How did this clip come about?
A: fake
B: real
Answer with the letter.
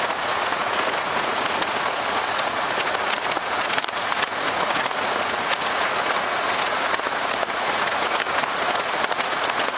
A